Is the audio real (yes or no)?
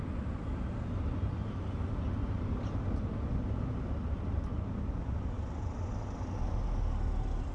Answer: yes